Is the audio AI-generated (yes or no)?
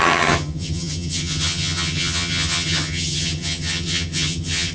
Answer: yes